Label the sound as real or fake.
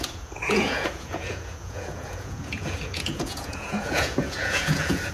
fake